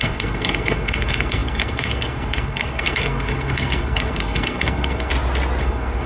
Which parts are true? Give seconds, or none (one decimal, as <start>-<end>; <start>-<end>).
5.1-5.6